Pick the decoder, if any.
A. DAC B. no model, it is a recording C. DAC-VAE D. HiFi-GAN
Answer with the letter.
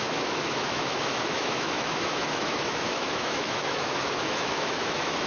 C